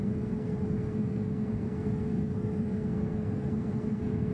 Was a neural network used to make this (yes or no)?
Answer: yes